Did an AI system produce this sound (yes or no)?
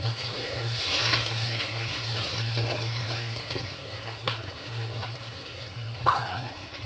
yes